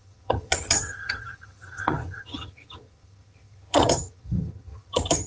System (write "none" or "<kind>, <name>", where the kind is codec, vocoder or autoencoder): vocoder, HiFi-GAN